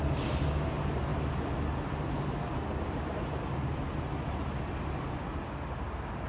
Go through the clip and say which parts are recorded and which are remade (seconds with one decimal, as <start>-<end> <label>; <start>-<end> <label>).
0.0-6.3 recorded